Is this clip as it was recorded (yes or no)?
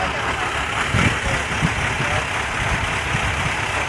yes